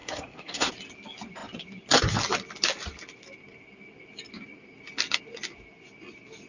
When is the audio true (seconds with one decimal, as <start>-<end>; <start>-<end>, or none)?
0.7-6.5